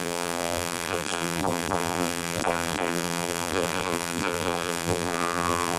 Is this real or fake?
fake